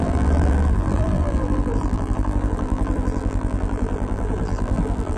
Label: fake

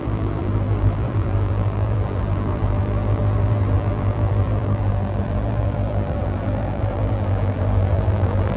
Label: fake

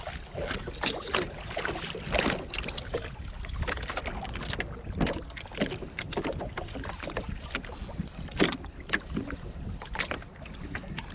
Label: real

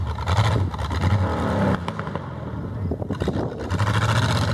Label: real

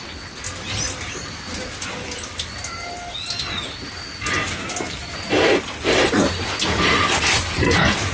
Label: real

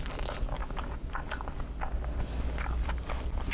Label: real